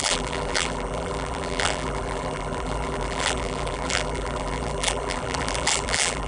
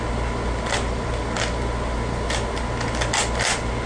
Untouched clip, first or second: second